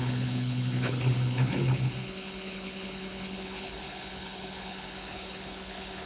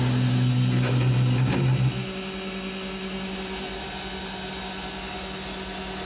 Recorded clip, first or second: second